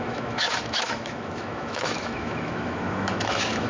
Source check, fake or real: fake